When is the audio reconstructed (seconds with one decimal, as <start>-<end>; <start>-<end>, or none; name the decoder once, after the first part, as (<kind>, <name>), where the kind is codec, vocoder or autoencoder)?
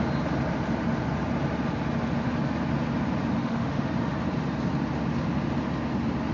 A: 3.4-3.9 (autoencoder, DAC-VAE)